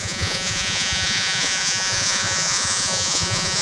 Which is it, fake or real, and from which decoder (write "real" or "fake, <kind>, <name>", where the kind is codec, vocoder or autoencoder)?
fake, vocoder, Vocos